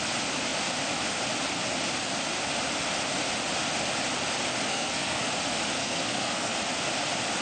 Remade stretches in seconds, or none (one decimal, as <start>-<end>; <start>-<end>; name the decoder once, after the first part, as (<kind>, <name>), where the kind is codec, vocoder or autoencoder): 4.7-5.3 (codec, SNAC); 5.8-6.5